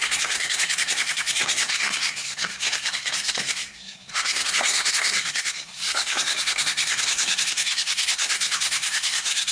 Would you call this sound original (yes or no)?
no